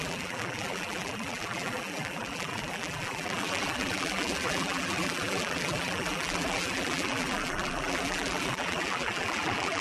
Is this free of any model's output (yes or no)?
no